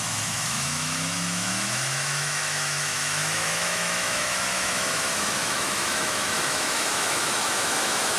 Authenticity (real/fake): fake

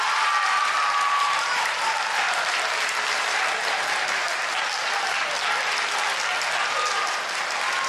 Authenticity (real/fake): real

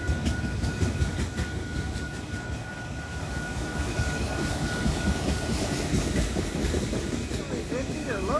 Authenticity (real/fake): fake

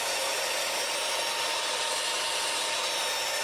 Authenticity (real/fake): real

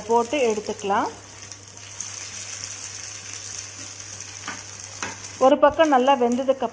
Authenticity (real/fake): real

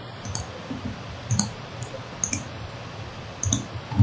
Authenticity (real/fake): real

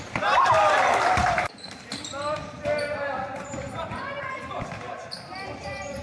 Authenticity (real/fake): real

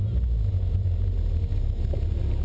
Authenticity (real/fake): real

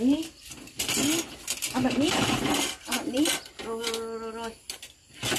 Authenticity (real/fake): real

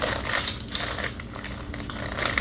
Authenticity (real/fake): real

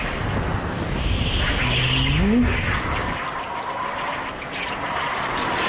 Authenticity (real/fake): real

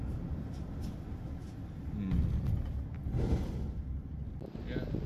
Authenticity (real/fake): real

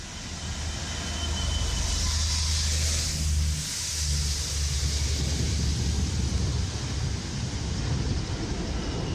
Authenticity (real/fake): real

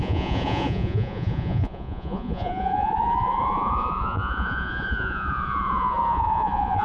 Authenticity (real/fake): fake